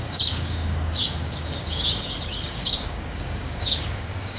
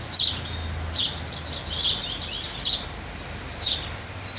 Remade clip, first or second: first